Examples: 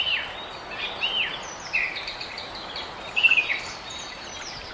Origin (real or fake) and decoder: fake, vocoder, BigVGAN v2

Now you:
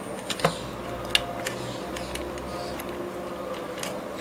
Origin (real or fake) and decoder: real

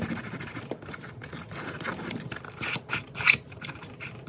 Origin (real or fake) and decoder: real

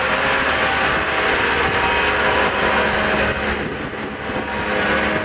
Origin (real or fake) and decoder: real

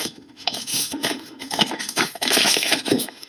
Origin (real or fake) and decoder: fake, autoencoder, DAC-VAE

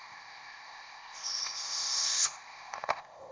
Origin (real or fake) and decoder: fake, codec, ZipCodec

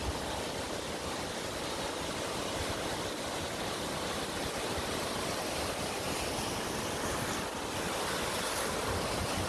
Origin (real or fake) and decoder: real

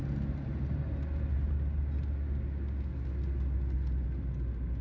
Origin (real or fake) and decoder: real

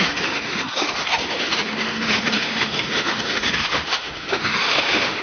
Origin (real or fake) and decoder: fake, autoencoder, DAC-VAE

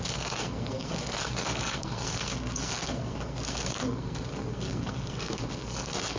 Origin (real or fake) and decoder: fake, codec, SNAC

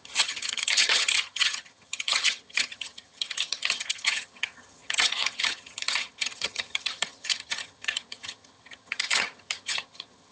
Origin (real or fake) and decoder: fake, vocoder, HiFi-GAN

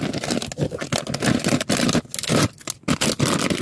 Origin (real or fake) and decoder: real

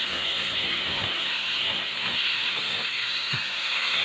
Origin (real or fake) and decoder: fake, codec, SNAC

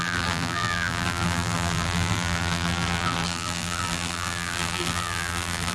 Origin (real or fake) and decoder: fake, vocoder, BigVGAN v2